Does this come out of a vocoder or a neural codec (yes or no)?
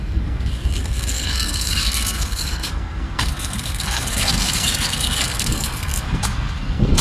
yes